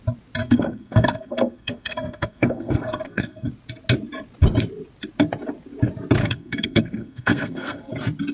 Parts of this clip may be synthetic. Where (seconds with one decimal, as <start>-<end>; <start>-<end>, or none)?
0.4-3.5; 6.2-7.9